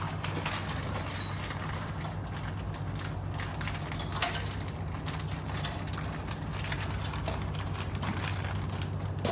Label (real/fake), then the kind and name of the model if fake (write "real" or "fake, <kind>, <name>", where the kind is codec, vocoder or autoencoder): real